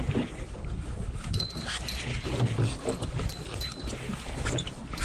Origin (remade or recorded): recorded